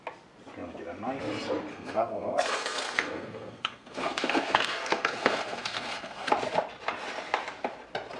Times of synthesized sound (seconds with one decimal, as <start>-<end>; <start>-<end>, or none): 1.7-6.3